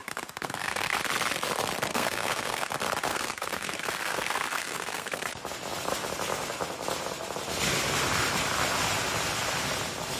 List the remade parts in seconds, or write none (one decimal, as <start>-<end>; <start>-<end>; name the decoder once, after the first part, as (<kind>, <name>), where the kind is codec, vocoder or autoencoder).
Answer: 0.0-1.0 (codec, SNAC); 1.9-2.7; 3.1-5.3